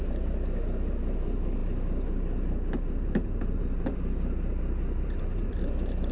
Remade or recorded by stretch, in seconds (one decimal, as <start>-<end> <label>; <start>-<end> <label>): 0.0-6.1 remade